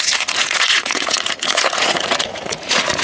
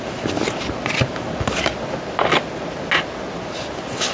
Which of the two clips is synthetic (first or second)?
first